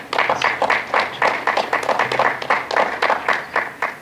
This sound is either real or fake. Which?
real